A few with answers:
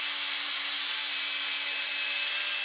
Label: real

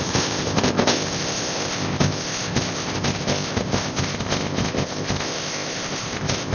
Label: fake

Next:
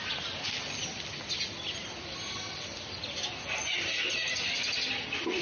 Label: real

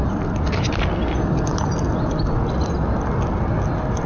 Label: real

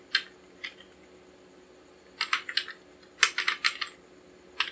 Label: real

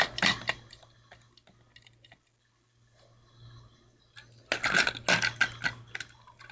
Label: real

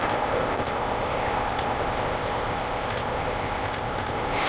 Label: fake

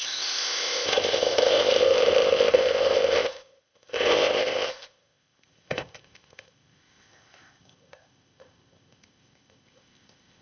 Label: fake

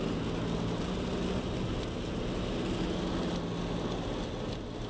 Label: real